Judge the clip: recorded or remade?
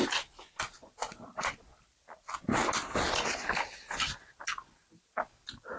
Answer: recorded